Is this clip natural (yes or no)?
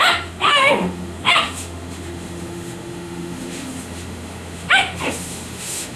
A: no